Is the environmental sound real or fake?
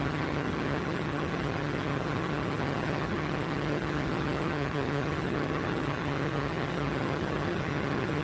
fake